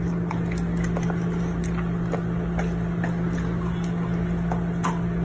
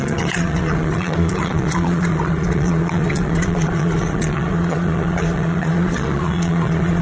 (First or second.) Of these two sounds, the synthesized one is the second